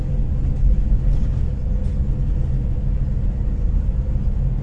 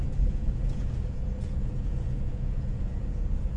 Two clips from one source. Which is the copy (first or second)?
second